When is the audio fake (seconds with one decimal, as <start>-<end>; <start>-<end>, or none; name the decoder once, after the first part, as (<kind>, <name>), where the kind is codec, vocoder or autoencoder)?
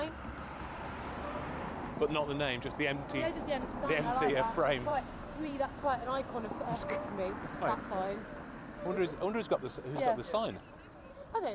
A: 2.0-2.6 (vocoder, BigVGAN v2); 4.9-5.7